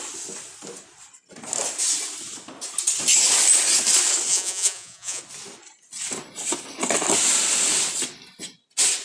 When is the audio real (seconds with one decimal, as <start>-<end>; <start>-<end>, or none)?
0.0-4.3; 5.2-9.0